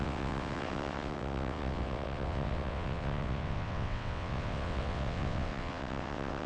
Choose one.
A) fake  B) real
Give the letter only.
A